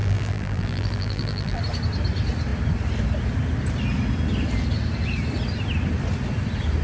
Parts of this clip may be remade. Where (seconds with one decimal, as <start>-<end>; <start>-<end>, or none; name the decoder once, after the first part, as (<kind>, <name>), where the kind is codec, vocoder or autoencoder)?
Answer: 0.0-1.6 (vocoder, BigVGAN v2)